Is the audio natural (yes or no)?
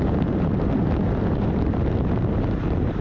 no